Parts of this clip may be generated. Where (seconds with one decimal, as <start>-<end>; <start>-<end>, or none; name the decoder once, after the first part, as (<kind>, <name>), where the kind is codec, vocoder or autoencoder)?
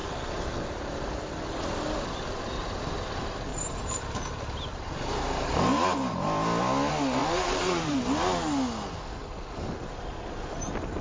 0.0-1.1 (vocoder, BigVGAN v2); 3.5-4.0; 4.7-5.5; 7.2-8.0